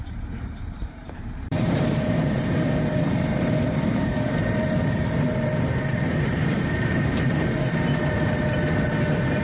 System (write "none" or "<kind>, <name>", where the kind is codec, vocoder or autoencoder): vocoder, BigVGAN v2